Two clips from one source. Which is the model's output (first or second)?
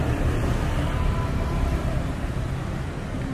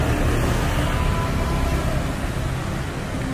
first